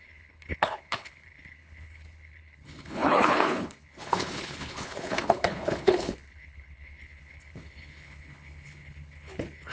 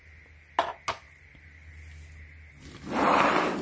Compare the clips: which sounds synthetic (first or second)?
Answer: first